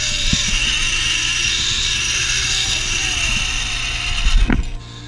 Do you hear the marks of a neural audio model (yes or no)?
no